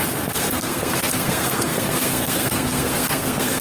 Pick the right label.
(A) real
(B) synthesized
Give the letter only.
B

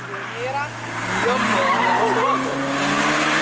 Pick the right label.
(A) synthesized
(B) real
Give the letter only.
B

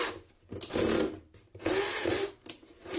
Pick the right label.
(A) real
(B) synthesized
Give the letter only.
A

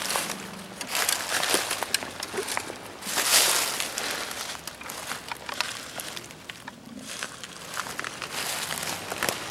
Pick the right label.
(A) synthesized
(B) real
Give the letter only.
B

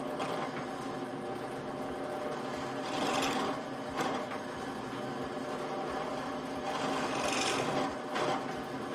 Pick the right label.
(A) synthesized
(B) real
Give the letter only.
B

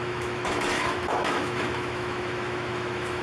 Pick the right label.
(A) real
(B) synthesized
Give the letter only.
B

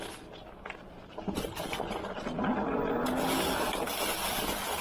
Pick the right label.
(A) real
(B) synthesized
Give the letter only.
A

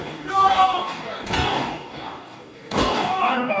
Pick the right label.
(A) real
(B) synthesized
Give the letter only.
B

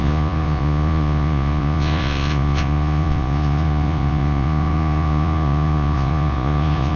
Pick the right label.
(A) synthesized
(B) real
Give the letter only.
A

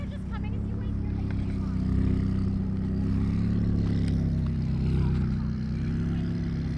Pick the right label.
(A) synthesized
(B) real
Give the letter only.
B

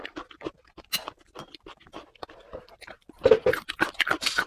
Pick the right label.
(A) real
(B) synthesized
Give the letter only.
A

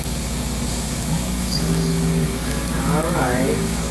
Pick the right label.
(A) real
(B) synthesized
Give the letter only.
B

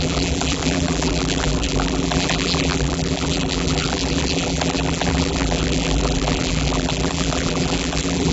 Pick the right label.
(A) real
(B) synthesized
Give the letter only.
B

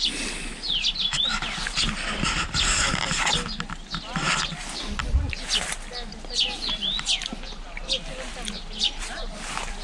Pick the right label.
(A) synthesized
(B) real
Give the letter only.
B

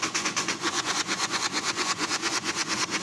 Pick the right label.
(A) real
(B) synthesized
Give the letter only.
B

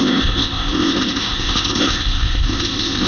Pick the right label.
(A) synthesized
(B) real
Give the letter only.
A